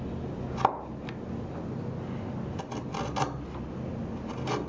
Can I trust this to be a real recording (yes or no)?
yes